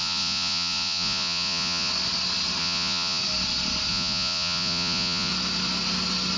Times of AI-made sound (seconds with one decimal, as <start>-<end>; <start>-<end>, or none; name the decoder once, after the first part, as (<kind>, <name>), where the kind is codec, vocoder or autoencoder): 0.0-1.9 (vocoder, Vocos); 2.6-3.2; 3.9-5.3